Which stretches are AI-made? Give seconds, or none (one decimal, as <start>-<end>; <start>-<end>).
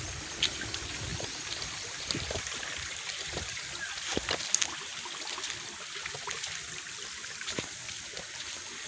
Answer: 1.1-3.6